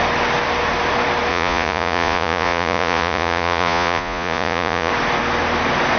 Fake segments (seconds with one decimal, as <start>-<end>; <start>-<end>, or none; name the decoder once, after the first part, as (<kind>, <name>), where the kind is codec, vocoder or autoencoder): 1.3-4.9 (vocoder, Vocos)